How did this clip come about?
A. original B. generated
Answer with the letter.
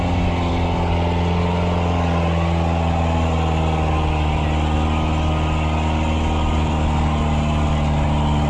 A